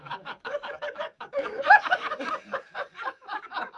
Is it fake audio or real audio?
fake